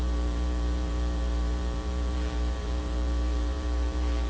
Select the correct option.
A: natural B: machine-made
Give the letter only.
B